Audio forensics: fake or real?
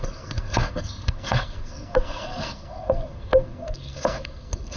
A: fake